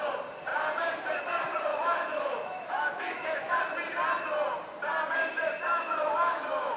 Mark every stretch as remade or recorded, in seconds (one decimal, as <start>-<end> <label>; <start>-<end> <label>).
0.0-1.7 recorded; 1.7-3.6 remade; 3.6-5.7 recorded; 5.7-6.8 remade